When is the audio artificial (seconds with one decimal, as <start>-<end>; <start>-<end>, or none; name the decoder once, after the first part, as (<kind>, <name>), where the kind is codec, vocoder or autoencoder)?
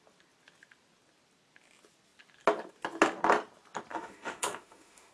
3.9-5.1 (autoencoder, DAC-VAE)